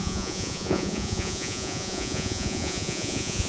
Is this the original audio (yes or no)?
no